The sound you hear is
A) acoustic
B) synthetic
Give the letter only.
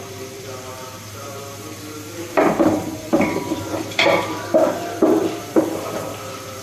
B